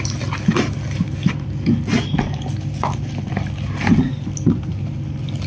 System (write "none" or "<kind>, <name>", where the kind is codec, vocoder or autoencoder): none